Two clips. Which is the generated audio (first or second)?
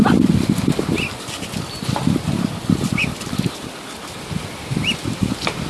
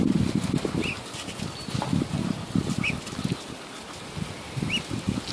first